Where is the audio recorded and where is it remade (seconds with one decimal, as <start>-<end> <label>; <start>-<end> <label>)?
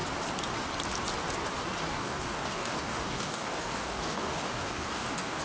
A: 0.0-1.9 recorded; 1.9-5.4 remade